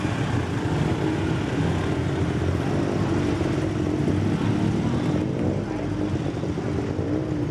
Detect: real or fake real